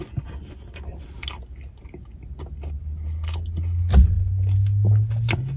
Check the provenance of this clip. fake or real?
real